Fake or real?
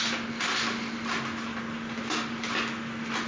real